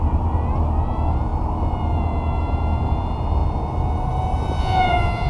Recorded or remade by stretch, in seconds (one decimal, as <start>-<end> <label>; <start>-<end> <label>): 0.0-4.6 recorded; 4.6-5.3 remade